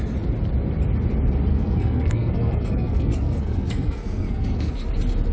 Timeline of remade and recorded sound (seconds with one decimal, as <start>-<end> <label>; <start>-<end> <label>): 0.0-1.5 recorded; 1.5-4.7 remade; 4.7-5.3 recorded